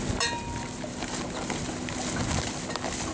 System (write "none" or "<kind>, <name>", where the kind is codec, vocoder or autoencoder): none